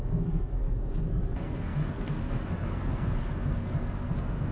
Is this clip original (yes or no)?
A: no